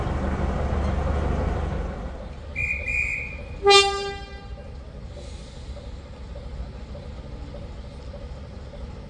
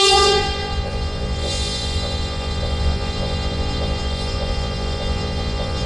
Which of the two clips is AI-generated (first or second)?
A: second